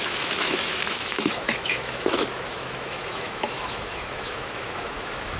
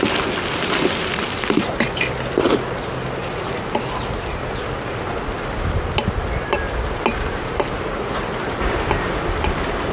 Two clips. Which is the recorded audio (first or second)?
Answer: second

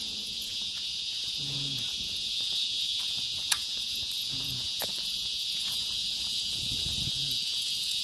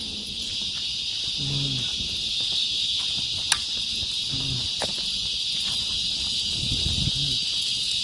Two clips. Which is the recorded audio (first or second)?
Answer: second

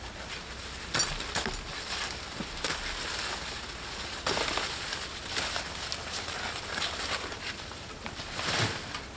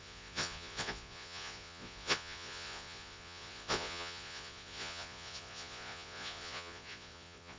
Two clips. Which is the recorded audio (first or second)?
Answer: first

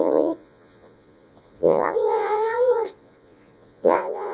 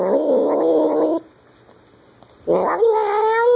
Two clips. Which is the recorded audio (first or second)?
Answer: second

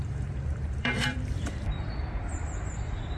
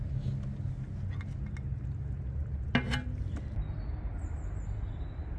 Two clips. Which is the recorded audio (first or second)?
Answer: second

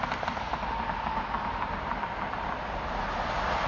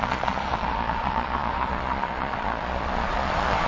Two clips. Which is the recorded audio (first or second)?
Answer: first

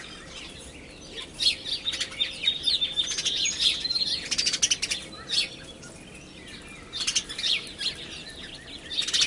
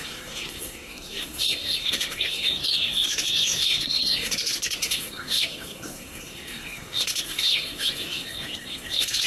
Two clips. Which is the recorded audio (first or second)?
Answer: first